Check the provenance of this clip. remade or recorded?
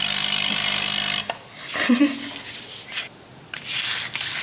recorded